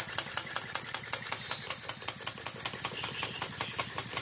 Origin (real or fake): real